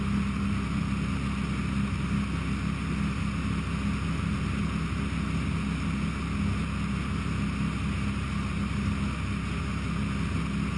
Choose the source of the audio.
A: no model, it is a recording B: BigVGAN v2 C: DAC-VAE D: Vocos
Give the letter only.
A